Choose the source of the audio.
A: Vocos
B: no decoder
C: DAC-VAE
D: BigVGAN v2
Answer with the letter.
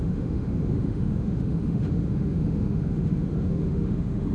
C